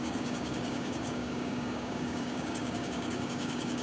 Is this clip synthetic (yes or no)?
yes